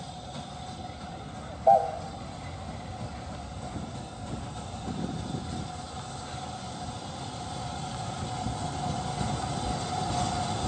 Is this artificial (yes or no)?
no